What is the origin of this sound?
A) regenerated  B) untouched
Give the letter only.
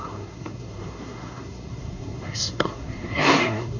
A